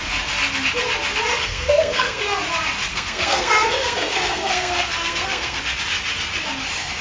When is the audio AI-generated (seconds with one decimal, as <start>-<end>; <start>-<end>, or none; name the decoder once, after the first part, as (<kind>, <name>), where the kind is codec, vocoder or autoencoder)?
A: 1.5-2.4 (codec, SNAC); 2.9-5.6